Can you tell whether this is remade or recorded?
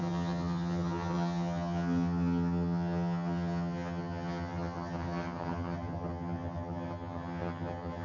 remade